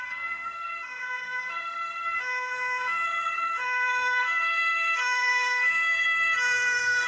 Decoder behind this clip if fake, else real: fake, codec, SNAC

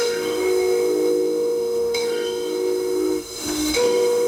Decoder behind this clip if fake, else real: fake, autoencoder, DAC-VAE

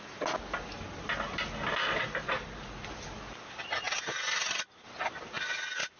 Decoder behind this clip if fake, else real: real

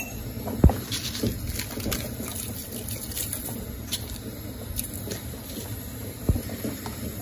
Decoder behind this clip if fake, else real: real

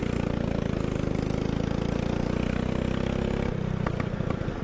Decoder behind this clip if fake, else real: real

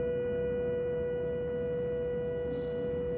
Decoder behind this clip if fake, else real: fake, autoencoder, DAC-VAE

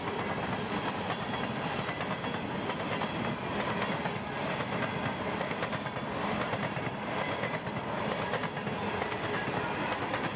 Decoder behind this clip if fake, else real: real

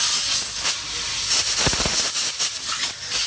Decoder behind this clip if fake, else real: real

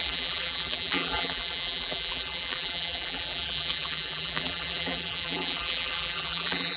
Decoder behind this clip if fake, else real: fake, vocoder, BigVGAN v2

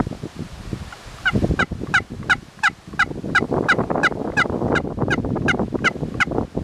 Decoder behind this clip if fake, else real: real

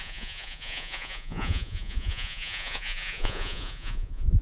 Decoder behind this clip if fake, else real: fake, vocoder, Vocos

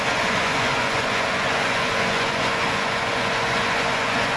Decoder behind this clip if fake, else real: fake, vocoder, Vocos